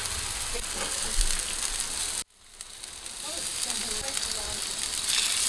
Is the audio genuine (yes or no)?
yes